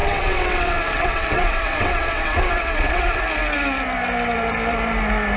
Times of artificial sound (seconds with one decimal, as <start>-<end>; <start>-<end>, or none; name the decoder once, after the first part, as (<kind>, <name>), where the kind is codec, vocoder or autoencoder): 0.0-3.2 (vocoder, WaveNeXt)